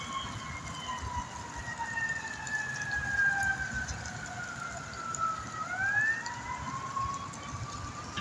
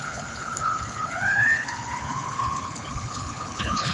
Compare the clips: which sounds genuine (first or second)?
first